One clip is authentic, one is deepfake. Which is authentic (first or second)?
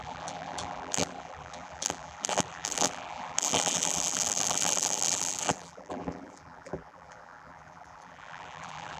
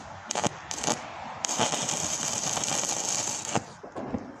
second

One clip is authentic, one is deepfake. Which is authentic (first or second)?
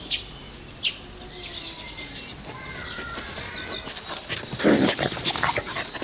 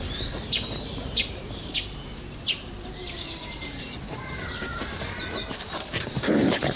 first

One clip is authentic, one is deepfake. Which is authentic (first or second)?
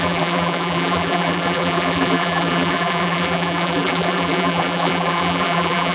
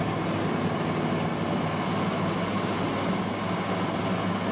second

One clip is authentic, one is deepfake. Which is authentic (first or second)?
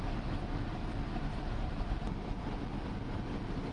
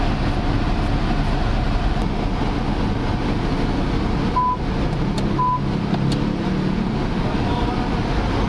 second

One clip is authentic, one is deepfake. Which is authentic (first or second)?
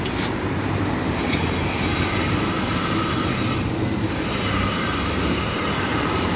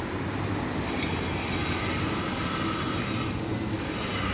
second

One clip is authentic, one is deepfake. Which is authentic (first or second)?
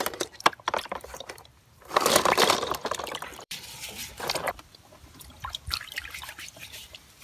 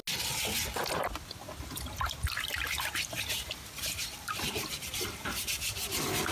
second